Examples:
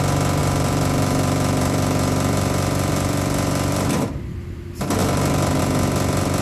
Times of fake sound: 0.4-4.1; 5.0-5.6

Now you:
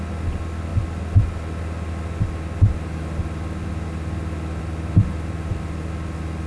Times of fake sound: none